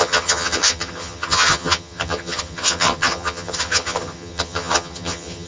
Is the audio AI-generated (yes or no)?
yes